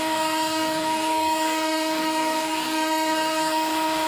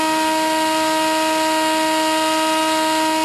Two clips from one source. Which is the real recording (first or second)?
second